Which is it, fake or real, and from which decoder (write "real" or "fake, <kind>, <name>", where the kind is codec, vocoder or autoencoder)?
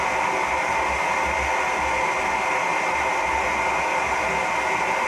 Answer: real